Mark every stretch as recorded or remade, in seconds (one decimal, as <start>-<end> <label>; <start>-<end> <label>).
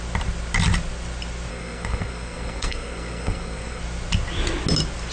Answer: 0.0-1.5 recorded; 1.5-3.8 remade; 3.8-5.1 recorded